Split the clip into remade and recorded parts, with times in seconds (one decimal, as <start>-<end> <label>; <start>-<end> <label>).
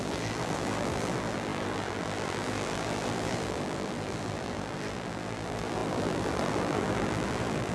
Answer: 0.0-7.7 remade